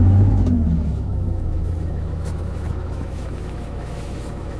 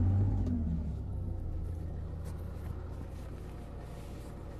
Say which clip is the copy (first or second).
first